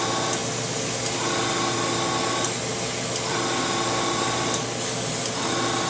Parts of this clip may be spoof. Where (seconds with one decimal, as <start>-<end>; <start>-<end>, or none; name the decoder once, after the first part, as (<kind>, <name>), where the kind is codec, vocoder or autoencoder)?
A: none